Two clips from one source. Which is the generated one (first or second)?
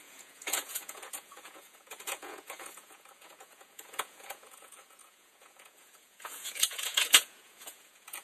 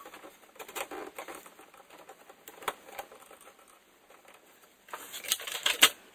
first